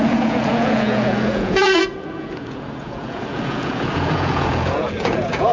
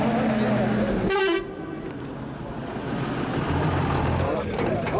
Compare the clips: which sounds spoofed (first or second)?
first